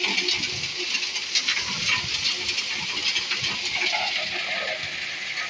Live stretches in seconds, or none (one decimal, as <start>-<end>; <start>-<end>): 0.0-5.5

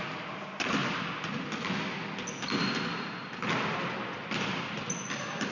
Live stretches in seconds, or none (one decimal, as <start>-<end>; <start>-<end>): 0.0-5.5

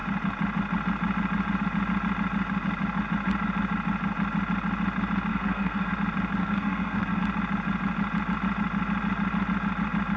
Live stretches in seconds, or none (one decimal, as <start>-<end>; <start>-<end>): 0.0-5.3; 5.9-6.4; 7.2-10.2

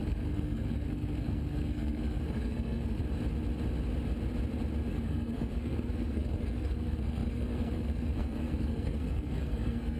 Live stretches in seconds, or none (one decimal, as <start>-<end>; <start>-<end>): 3.0-4.9

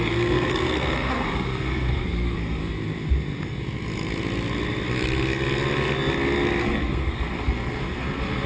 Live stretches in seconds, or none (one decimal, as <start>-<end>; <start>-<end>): 2.6-6.6

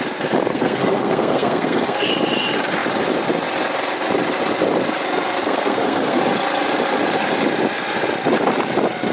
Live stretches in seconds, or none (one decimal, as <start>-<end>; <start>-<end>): 0.0-0.5; 2.1-5.4; 6.2-9.1

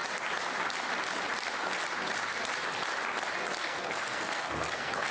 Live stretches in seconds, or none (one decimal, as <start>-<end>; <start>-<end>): 0.0-3.6